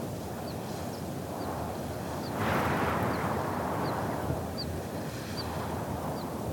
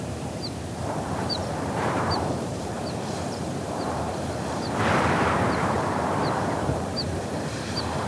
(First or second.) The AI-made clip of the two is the second